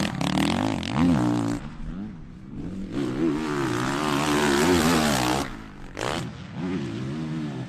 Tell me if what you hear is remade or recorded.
recorded